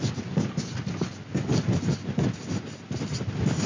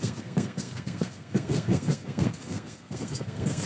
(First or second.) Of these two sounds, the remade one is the second